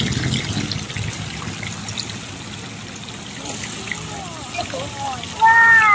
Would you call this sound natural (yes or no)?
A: yes